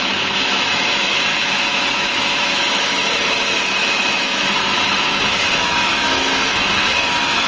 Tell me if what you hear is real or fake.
fake